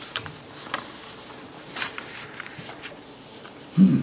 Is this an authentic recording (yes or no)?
no